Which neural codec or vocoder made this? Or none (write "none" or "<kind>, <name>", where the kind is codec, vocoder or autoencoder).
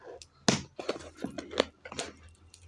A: none